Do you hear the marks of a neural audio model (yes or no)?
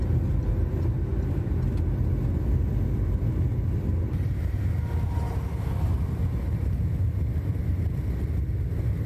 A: no